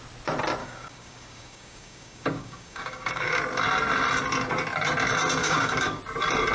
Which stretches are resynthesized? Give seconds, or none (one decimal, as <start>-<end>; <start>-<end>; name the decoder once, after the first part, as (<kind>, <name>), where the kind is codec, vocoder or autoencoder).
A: 0.6-3.4 (codec, DAC); 5.4-6.0